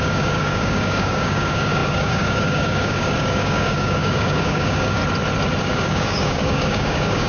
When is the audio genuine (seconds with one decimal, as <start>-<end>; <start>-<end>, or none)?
5.0-5.6